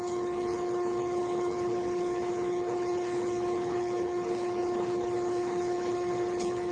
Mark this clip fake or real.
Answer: fake